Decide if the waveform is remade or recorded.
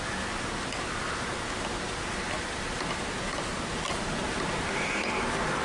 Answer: recorded